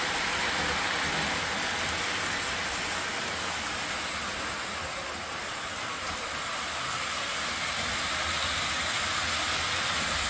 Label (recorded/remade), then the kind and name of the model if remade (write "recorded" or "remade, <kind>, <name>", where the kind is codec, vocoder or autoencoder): recorded